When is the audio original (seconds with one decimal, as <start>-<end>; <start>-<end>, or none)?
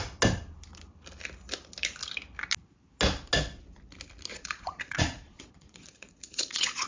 0.0-4.3